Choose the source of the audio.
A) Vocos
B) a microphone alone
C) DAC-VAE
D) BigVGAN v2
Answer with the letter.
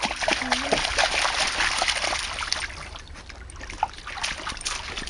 B